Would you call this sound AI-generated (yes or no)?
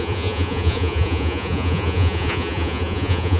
yes